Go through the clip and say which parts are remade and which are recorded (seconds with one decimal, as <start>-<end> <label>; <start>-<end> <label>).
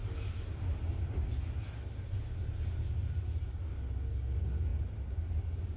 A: 0.0-1.4 remade; 1.4-3.0 recorded; 3.0-3.6 remade; 3.6-4.7 recorded; 4.7-5.8 remade